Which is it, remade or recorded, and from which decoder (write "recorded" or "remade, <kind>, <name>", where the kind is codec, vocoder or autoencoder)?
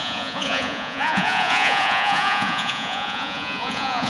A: remade, vocoder, Vocos